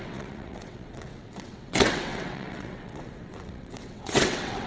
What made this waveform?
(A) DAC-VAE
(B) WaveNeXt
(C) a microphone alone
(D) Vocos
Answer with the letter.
B